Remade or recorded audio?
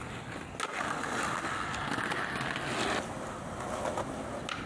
recorded